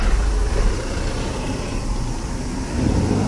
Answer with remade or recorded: remade